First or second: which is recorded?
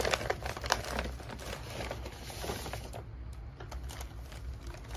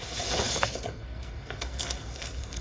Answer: first